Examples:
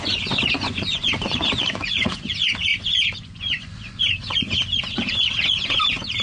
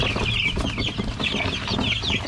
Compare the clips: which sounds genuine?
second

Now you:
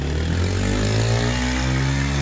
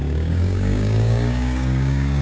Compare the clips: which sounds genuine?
first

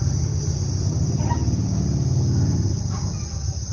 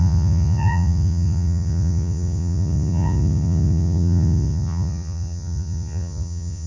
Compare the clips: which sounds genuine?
first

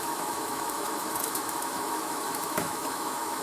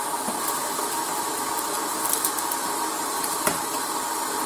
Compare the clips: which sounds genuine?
second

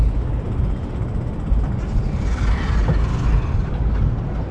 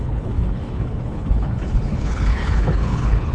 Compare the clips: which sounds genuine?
first